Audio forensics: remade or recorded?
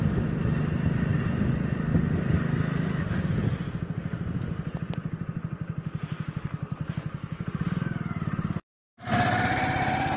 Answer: recorded